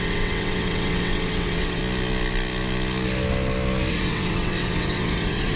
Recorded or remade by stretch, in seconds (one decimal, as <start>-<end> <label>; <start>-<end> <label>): 0.0-1.8 remade; 1.8-3.9 recorded; 3.9-5.6 remade